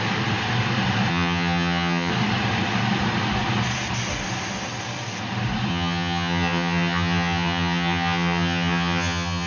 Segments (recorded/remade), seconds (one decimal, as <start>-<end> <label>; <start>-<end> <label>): 0.0-1.1 recorded; 1.1-2.1 remade; 2.1-5.7 recorded; 5.7-9.5 remade